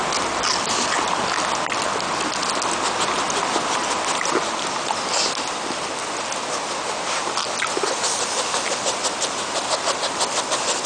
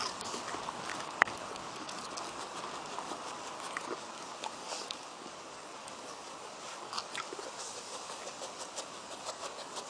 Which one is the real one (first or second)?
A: first